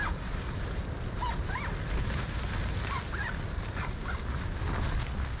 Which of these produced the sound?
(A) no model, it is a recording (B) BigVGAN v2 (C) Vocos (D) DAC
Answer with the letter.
A